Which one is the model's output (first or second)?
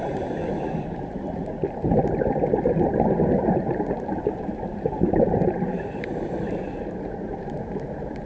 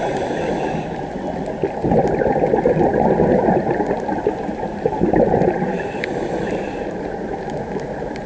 first